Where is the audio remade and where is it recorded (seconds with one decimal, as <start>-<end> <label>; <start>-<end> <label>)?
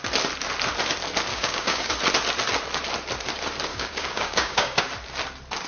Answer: 0.0-1.3 recorded; 1.3-1.9 remade; 1.9-3.7 recorded; 3.7-4.8 remade; 4.8-5.7 recorded